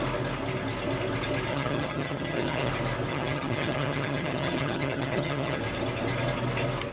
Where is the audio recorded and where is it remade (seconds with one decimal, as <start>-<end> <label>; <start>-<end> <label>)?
0.0-1.5 recorded; 1.5-2.7 remade; 2.7-3.1 recorded; 3.1-5.6 remade; 5.6-6.9 recorded